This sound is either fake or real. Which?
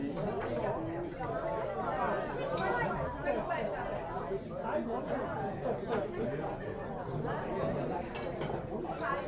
real